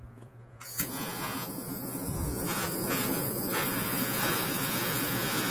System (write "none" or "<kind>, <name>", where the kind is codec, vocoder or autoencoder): vocoder, Vocos